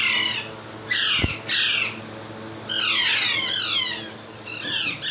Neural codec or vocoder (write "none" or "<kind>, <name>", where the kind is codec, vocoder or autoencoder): none